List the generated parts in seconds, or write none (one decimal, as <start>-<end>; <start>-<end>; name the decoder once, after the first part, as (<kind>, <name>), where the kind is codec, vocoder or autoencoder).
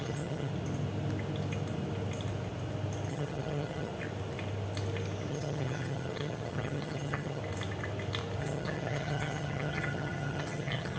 0.0-0.5 (vocoder, HiFi-GAN); 3.1-3.9; 5.3-7.4; 8.4-11.0